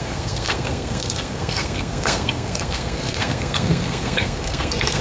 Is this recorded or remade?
remade